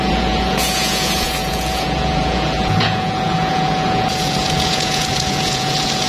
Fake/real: fake